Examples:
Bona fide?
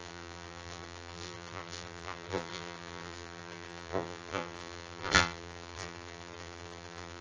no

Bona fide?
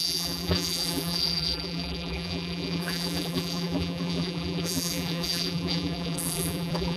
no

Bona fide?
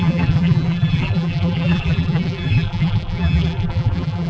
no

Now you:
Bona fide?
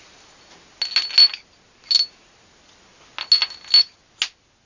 yes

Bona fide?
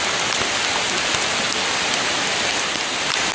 yes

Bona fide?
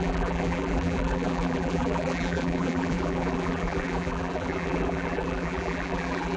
no